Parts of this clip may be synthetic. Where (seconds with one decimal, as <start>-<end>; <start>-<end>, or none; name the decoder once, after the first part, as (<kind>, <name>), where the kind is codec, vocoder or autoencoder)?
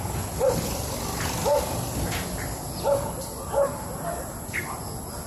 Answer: none